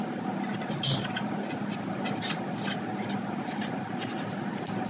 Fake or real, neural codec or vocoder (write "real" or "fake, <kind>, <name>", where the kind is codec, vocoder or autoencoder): real